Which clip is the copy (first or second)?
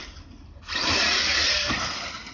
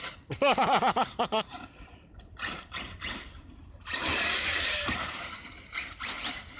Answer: second